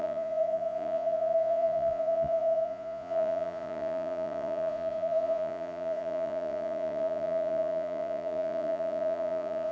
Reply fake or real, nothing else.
fake